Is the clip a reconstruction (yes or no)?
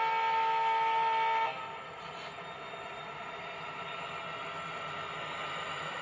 no